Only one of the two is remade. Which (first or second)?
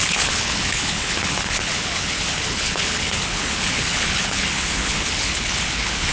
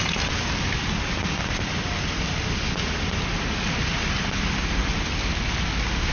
first